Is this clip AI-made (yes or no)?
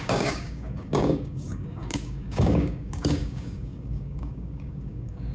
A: yes